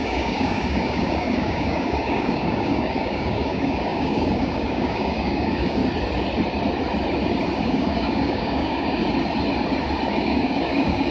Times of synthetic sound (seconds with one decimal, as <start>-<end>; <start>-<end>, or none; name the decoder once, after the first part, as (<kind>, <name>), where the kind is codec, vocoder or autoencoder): 0.0-5.8 (codec, DAC); 7.6-9.0; 10.1-11.1